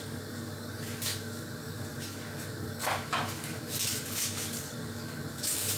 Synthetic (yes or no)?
yes